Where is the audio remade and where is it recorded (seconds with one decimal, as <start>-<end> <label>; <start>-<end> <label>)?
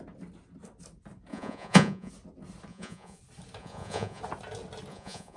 0.0-1.3 recorded; 1.3-2.1 remade; 2.1-2.7 recorded; 2.7-3.2 remade; 3.2-3.6 recorded; 3.6-4.2 remade; 4.2-4.9 recorded; 4.9-5.4 remade